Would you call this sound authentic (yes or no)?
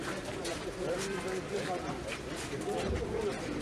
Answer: no